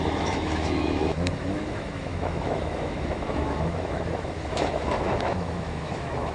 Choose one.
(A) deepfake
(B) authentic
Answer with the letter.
A